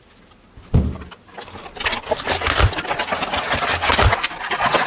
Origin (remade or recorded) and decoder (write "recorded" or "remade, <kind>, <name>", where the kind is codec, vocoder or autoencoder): recorded